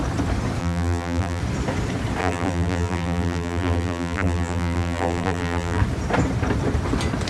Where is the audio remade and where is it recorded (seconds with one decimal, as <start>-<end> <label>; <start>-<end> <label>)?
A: 0.0-0.6 recorded; 0.6-1.4 remade; 1.4-2.2 recorded; 2.2-5.8 remade; 5.8-7.3 recorded